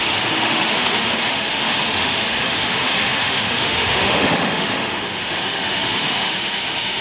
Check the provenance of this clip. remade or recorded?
remade